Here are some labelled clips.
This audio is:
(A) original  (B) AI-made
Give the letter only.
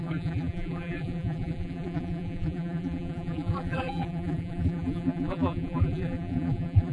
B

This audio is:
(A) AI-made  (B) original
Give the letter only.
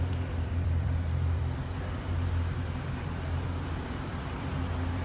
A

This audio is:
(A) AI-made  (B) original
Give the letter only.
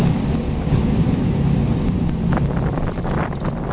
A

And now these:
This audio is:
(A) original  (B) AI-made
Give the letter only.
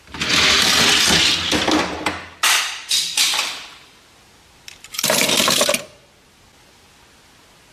A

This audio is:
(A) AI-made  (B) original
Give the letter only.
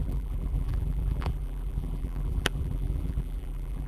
A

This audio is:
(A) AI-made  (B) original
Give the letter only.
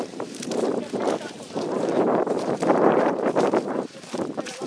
A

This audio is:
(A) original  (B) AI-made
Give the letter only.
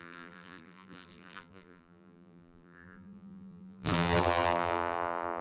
B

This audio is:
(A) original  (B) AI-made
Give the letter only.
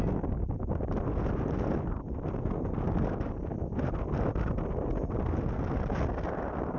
A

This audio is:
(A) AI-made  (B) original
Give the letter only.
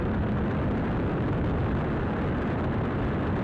B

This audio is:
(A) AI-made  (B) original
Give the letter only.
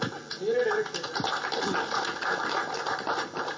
B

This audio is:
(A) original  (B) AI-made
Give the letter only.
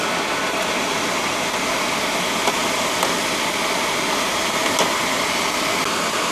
A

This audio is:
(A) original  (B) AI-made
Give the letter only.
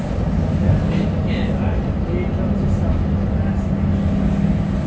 A